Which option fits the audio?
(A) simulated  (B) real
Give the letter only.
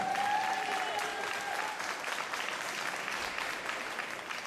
A